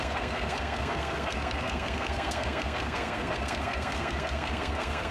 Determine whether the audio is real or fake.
fake